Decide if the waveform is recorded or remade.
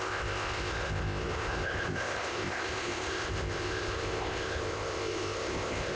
remade